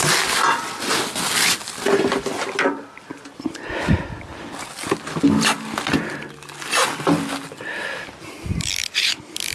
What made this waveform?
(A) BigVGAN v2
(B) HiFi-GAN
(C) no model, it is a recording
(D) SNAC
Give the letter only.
C